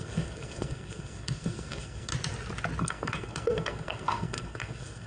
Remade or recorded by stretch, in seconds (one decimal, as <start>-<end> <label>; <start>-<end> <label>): 0.0-2.1 remade; 2.1-2.8 recorded; 2.8-5.1 remade